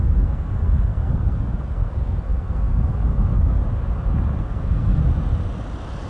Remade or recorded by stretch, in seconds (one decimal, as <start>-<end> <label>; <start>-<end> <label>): 0.0-3.6 remade; 3.6-4.4 recorded; 4.4-5.0 remade; 5.0-6.1 recorded